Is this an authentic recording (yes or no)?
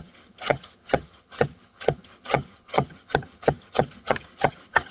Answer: no